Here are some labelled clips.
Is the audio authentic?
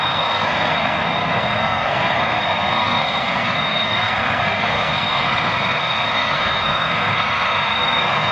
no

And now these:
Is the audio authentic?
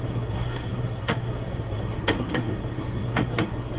no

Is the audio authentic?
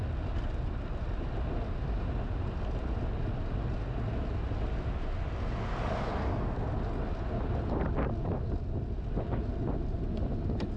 yes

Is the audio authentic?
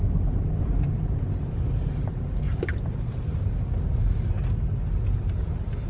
yes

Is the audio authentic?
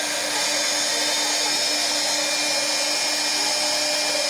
yes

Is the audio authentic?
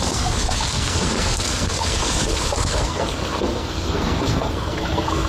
no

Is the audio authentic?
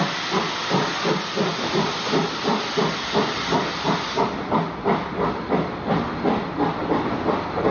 yes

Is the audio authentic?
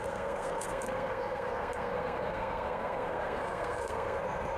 no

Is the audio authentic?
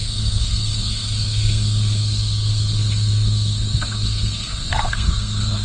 no